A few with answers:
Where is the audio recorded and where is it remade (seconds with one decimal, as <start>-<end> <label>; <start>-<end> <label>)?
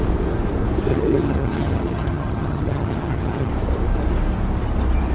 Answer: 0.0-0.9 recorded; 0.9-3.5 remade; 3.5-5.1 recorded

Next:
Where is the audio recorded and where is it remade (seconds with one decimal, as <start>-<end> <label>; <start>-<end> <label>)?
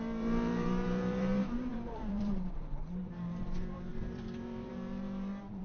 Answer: 0.0-5.6 remade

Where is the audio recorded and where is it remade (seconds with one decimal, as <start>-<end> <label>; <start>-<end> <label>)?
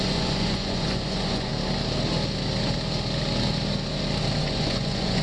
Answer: 0.0-1.5 remade; 1.5-4.4 recorded; 4.4-5.2 remade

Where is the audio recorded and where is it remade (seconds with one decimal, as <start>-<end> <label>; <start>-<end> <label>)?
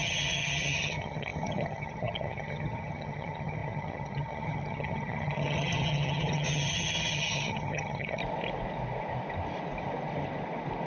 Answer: 0.0-8.2 remade; 8.2-10.9 recorded